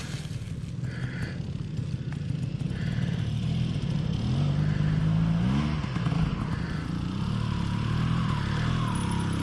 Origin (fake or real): real